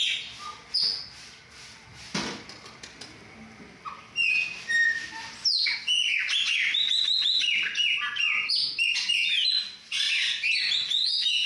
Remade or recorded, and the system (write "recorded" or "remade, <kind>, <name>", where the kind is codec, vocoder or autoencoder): recorded